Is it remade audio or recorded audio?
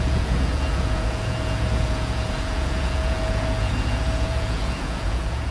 remade